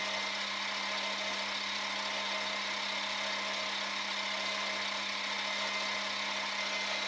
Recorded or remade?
recorded